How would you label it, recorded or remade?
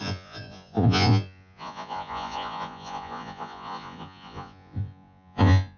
remade